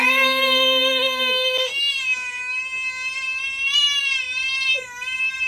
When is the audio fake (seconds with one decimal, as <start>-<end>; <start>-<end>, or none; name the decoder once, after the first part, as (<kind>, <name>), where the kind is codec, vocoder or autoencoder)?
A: none